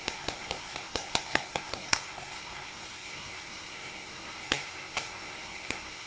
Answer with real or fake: fake